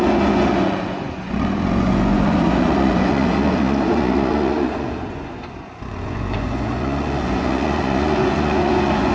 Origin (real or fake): fake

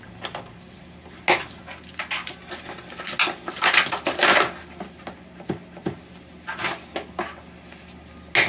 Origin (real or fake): real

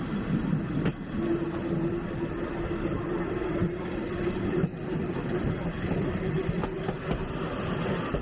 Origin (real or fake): real